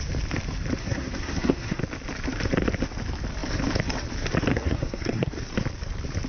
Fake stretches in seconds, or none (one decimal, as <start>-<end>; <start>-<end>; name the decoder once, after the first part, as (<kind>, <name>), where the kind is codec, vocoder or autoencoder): 0.8-1.8 (codec, SNAC); 4.5-5.3